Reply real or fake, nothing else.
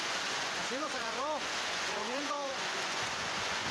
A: fake